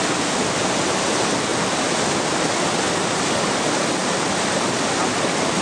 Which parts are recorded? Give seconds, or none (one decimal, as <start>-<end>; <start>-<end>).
0.0-1.5; 2.7-4.0